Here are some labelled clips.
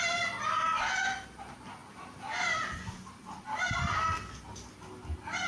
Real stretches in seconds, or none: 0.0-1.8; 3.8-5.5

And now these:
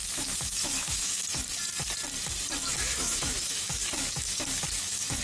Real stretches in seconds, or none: 1.4-2.6

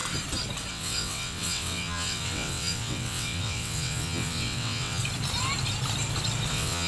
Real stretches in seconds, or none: 0.0-0.7; 5.0-6.5

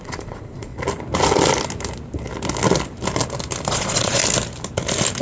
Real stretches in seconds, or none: 0.7-3.7; 4.2-5.2

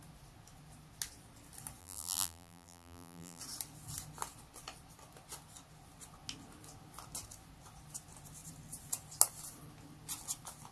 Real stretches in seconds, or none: 0.0-1.8; 3.4-10.7